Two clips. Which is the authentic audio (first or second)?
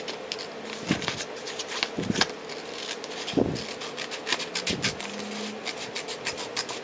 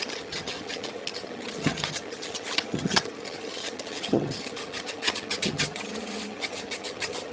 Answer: first